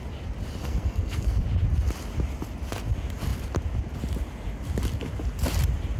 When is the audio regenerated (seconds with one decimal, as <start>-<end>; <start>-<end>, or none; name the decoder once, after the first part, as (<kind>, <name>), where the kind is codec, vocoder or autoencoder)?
0.6-1.4 (codec, SNAC)